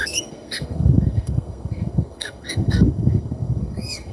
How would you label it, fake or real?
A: fake